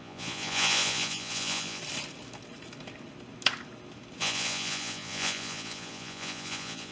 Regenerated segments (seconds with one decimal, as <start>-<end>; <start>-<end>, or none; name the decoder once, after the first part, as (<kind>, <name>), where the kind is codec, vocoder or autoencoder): 0.0-1.8 (vocoder, Vocos); 4.2-6.9

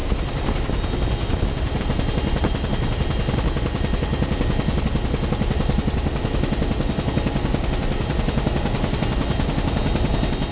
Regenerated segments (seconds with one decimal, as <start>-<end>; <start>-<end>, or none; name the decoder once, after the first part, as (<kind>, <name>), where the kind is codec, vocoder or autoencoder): none

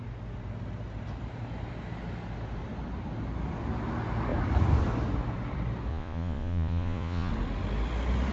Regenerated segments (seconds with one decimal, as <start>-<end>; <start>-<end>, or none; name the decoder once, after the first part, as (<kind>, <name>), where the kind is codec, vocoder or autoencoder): 5.9-7.3 (vocoder, Vocos)

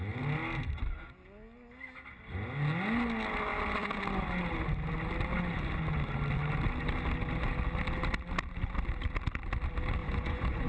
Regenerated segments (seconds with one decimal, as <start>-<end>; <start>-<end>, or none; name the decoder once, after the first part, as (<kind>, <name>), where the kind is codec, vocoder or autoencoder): 10.0-10.7 (vocoder, Vocos)